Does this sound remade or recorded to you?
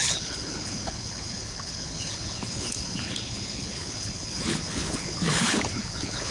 remade